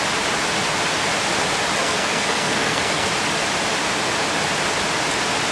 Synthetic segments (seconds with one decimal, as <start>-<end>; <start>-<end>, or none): 1.8-3.1